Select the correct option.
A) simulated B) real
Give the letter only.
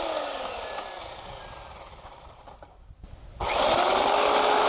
B